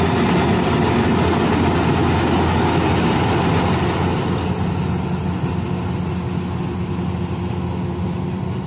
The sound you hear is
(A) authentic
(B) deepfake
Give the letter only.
A